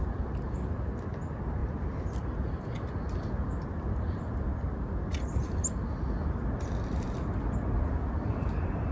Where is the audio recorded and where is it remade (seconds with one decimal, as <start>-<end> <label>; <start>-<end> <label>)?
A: 0.0-8.9 recorded